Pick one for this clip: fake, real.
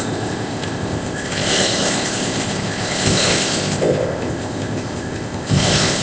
fake